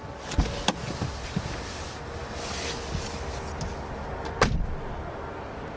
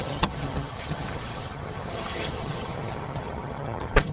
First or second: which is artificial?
second